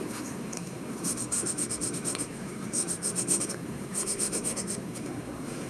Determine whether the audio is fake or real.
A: fake